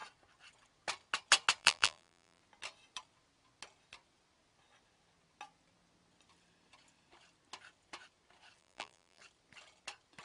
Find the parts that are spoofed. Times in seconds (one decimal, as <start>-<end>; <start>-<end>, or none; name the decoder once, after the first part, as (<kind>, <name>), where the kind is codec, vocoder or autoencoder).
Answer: 1.6-2.4 (vocoder, BigVGAN v2); 8.6-9.2

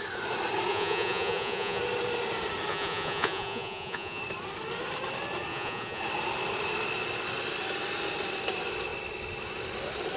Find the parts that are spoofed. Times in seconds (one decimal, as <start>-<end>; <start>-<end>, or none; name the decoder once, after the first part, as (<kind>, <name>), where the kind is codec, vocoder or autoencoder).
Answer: 0.7-1.8 (vocoder, Vocos); 2.7-4.2; 5.5-6.0